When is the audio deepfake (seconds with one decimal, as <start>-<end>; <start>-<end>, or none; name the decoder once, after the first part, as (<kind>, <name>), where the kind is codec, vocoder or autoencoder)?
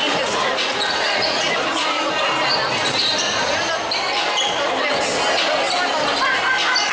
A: 0.0-2.1 (vocoder, Vocos); 3.1-3.7